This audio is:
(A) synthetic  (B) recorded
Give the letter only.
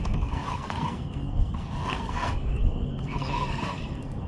A